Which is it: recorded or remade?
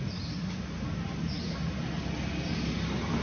recorded